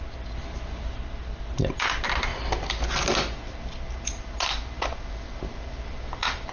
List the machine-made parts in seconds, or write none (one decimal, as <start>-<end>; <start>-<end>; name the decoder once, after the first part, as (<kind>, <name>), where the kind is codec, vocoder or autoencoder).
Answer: none